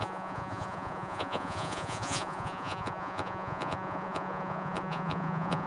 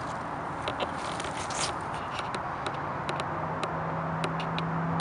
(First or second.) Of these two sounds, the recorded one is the second